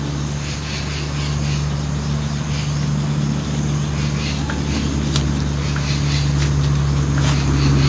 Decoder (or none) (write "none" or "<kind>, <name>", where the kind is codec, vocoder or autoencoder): none